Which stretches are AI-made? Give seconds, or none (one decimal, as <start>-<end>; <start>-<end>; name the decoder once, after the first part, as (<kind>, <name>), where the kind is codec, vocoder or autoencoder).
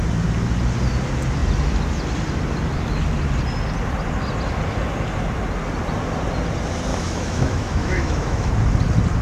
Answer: 6.9-8.5 (autoencoder, DAC-VAE)